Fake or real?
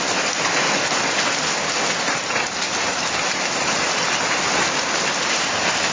real